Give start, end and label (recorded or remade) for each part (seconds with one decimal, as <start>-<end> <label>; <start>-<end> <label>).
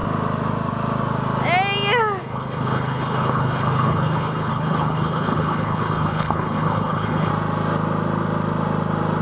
0.0-2.2 recorded; 2.2-7.3 remade; 7.3-9.2 recorded